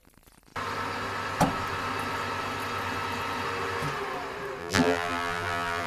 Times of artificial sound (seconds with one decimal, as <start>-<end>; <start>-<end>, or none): 4.6-5.9